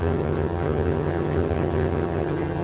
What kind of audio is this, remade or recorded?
remade